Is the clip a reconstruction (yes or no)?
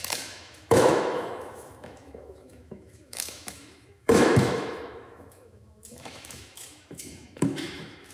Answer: yes